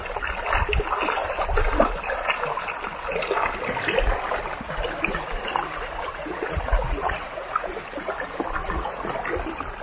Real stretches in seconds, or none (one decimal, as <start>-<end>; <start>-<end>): 0.0-6.1; 7.7-8.6; 9.1-9.8

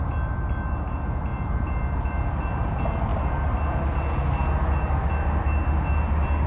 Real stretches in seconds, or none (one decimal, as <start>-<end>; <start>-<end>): 0.0-6.5

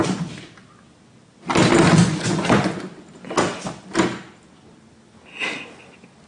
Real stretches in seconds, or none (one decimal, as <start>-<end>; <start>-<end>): 0.0-2.0; 2.8-6.3

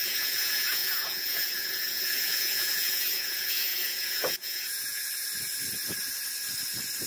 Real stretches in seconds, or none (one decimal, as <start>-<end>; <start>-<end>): 5.0-7.1

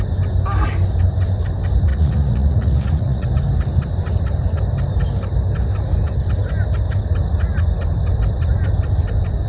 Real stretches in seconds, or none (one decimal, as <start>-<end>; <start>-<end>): 0.0-1.9; 3.3-9.5